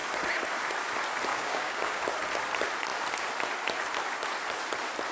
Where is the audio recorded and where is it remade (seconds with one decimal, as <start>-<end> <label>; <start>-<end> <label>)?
0.0-1.3 recorded; 1.3-2.0 remade; 2.0-5.1 recorded